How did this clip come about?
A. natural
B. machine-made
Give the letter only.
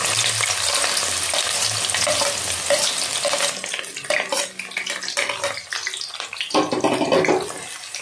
A